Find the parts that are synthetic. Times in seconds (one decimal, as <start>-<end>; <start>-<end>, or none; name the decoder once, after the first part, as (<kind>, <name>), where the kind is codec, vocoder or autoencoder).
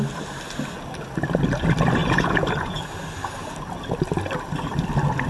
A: 2.0-2.8 (vocoder, Vocos)